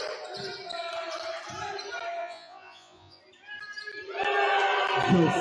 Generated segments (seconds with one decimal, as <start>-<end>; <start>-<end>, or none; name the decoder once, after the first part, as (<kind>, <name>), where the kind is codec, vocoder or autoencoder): 2.2-3.2 (vocoder, Vocos)